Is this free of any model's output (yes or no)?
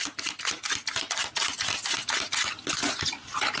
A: yes